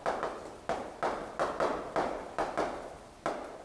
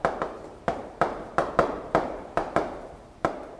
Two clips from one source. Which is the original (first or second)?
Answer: first